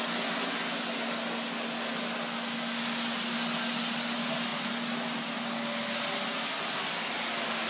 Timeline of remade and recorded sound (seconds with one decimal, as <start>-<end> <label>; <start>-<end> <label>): 0.0-7.7 recorded

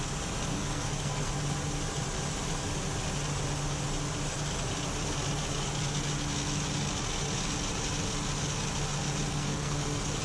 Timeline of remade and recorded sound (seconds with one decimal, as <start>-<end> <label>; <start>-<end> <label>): 0.0-0.5 recorded; 0.5-1.3 remade; 1.3-9.3 recorded; 9.3-10.2 remade

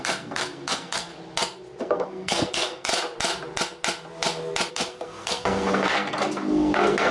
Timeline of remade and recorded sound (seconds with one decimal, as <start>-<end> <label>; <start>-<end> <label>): 0.0-1.1 remade; 1.1-1.8 recorded; 1.8-2.9 remade; 2.9-4.7 recorded; 4.7-7.1 remade

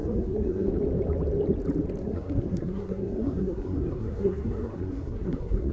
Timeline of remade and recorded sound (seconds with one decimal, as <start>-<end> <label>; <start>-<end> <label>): 0.0-0.7 remade; 0.7-2.0 recorded; 2.0-5.7 remade